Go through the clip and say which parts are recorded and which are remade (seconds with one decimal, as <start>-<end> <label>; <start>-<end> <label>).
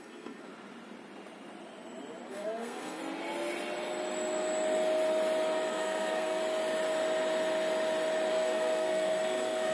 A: 0.0-0.5 remade; 0.5-2.3 recorded; 2.3-3.0 remade; 3.0-5.7 recorded; 5.7-6.4 remade; 6.4-8.3 recorded; 8.3-9.7 remade